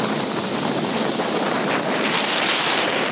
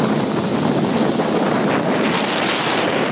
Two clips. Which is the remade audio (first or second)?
first